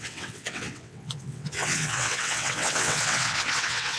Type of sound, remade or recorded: remade